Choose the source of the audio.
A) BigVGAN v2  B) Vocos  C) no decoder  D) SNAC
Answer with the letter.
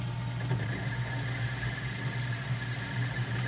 C